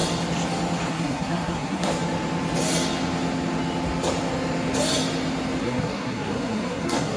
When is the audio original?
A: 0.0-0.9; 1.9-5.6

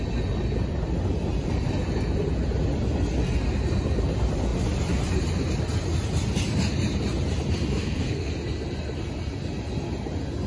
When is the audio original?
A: 0.0-7.8; 8.3-10.5

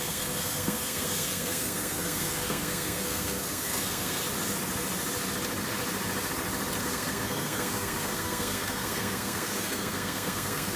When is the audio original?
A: 4.2-6.8